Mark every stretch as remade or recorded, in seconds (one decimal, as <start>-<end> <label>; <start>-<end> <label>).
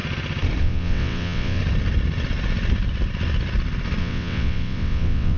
0.0-0.6 recorded; 0.6-1.6 remade; 1.6-4.0 recorded; 4.0-5.4 remade